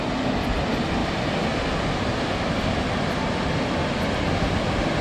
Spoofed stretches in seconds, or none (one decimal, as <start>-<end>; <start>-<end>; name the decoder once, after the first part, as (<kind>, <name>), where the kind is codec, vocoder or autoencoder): none